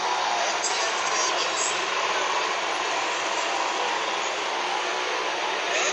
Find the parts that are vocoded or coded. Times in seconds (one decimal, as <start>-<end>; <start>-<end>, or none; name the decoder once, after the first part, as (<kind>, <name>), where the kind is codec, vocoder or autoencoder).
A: none